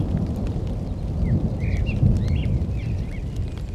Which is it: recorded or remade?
recorded